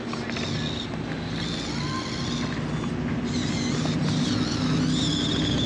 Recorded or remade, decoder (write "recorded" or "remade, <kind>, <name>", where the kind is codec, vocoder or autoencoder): recorded